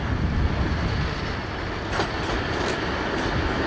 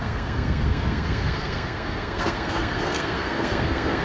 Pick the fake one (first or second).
second